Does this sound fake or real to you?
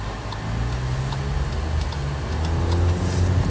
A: real